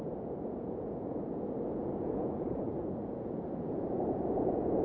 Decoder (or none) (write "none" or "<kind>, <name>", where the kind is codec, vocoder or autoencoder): vocoder, Vocos